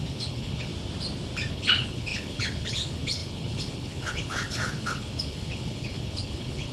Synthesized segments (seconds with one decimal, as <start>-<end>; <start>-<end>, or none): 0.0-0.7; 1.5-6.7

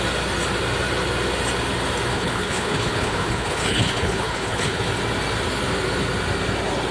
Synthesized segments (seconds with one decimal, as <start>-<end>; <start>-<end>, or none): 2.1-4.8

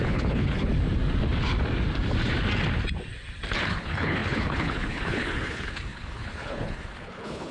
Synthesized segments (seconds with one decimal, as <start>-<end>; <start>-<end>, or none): 0.0-0.7; 3.6-7.5